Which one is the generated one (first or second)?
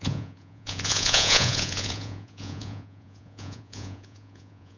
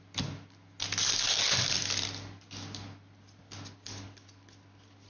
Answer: first